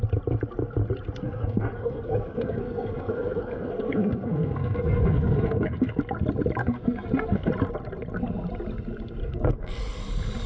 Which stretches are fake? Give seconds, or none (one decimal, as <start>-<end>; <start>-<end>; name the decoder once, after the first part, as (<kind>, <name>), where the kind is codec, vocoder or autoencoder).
1.2-6.0 (codec, SNAC); 6.6-7.5; 9.2-9.8